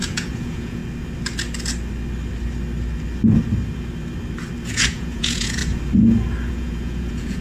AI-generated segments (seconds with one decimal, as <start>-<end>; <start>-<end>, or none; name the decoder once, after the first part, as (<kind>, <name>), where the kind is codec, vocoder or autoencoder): 0.0-0.8 (vocoder, Vocos); 4.7-5.6; 6.5-7.4